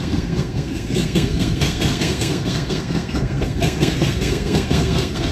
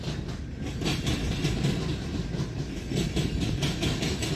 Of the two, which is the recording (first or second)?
second